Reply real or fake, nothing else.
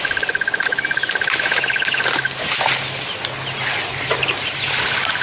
real